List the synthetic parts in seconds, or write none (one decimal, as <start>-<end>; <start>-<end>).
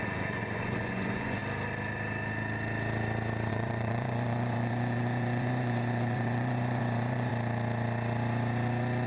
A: 0.0-1.4; 3.5-7.3